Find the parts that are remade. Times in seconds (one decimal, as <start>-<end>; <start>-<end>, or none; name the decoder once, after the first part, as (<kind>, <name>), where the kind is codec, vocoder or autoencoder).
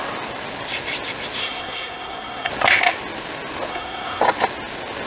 1.4-2.5 (codec, SNAC); 3.7-4.2